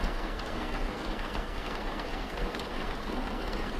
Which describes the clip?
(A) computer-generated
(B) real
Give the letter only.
A